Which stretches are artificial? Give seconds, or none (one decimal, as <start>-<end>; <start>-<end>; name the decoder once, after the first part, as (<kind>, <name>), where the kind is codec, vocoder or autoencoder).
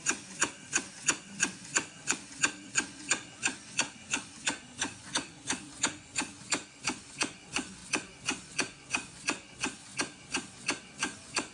0.0-9.9 (vocoder, Vocos); 10.8-11.5